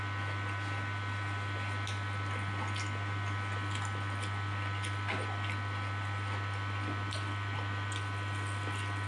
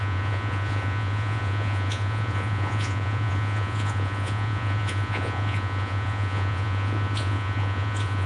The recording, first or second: first